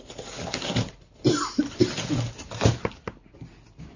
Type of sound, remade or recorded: recorded